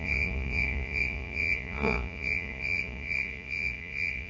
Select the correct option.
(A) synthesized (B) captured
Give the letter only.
A